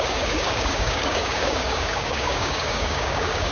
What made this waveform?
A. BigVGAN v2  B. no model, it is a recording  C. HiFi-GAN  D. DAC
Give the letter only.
D